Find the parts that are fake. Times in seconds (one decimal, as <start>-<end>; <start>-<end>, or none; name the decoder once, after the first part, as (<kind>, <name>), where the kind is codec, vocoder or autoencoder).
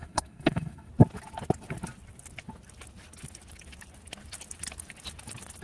0.0-0.9 (codec, SNAC)